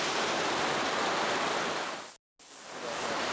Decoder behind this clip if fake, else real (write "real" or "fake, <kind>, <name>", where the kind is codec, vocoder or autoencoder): real